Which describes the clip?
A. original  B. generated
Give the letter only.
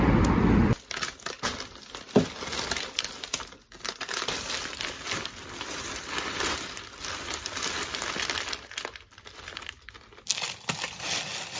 A